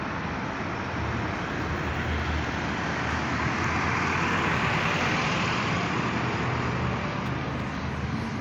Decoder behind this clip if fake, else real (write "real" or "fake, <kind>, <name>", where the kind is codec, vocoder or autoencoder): real